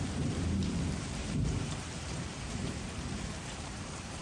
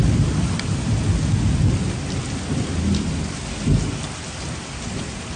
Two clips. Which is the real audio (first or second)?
second